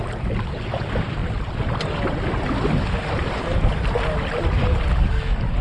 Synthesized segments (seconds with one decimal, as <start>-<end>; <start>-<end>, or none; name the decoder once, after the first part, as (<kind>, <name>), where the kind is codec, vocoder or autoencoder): none